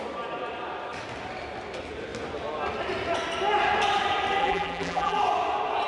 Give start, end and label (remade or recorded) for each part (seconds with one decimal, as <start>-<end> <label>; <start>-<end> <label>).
0.0-4.4 recorded; 4.4-5.2 remade; 5.2-5.9 recorded